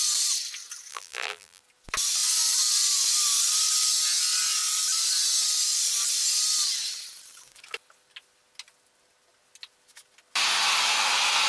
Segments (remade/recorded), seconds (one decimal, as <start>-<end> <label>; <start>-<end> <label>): 0.0-0.9 recorded; 0.9-1.6 remade; 1.6-11.5 recorded